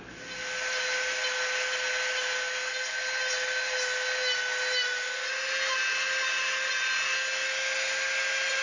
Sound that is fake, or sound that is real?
real